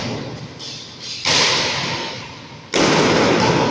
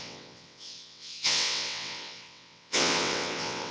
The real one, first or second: first